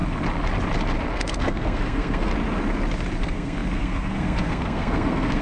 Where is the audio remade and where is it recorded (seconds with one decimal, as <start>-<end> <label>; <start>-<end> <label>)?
0.0-1.1 recorded; 1.1-2.3 remade; 2.3-3.2 recorded; 3.2-5.4 remade